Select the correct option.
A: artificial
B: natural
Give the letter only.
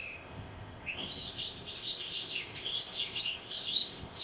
A